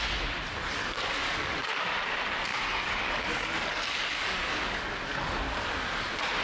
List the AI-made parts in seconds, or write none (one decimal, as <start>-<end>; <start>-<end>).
0.8-1.9; 2.5-5.4